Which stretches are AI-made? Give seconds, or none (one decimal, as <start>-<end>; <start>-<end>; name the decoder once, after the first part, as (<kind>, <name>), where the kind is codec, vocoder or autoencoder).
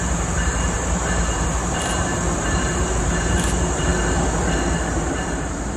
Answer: 0.0-3.9 (vocoder, BigVGAN v2); 4.9-5.8